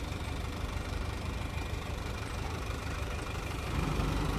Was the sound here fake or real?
fake